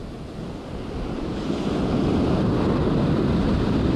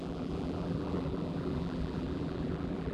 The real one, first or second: first